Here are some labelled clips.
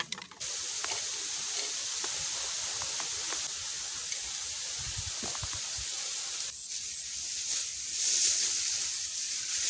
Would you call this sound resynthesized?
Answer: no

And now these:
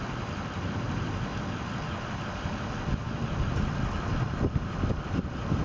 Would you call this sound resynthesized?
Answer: no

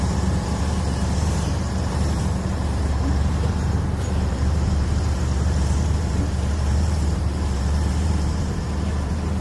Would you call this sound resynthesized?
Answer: yes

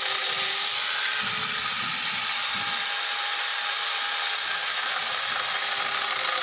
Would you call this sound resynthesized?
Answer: yes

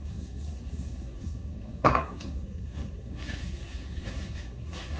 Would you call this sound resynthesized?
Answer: yes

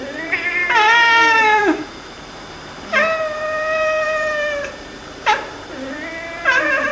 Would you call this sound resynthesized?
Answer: yes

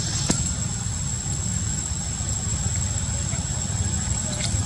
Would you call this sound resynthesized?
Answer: no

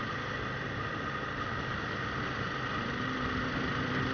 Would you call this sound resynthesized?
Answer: no